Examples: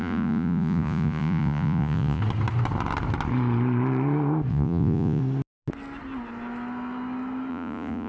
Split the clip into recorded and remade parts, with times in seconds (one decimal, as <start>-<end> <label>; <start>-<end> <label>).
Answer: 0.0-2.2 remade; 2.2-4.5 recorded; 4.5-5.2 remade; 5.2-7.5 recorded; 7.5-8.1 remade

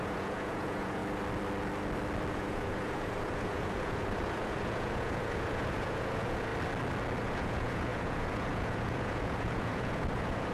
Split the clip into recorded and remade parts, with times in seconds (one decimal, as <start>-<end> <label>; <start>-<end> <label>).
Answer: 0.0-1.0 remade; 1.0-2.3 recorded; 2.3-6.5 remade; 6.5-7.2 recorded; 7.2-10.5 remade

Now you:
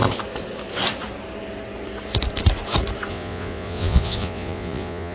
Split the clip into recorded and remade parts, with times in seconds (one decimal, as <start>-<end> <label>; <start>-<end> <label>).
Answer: 0.0-3.1 recorded; 3.1-5.1 remade

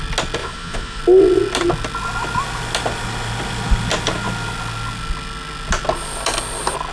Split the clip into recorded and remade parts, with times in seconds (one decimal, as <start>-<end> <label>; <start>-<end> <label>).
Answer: 0.0-0.4 recorded; 0.4-1.0 remade; 1.0-6.9 recorded